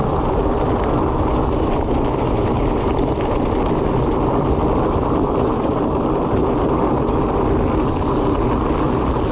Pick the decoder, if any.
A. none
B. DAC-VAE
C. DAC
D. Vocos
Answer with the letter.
A